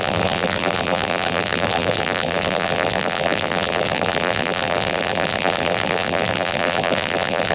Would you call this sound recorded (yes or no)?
no